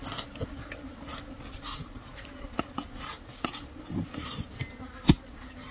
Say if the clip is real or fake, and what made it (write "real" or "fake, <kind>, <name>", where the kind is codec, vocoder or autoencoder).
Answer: real